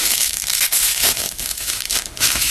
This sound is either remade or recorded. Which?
remade